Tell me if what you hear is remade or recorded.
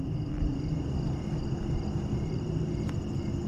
recorded